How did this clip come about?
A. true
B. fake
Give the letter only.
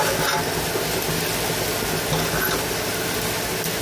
A